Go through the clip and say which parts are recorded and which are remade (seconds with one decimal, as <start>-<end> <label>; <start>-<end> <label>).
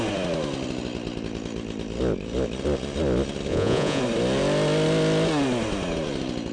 0.0-3.5 recorded; 3.5-4.0 remade; 4.0-6.5 recorded